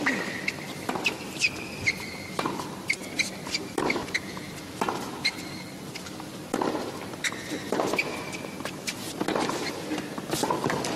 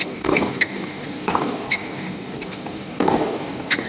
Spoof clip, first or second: second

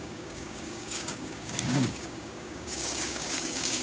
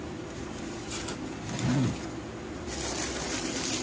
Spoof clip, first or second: first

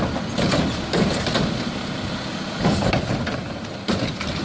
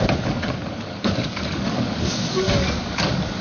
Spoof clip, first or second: second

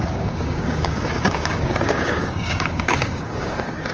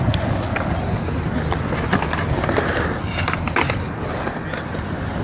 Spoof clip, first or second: first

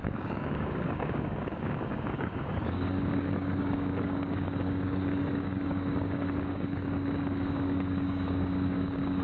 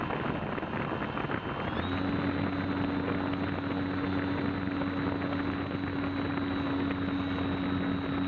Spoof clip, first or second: first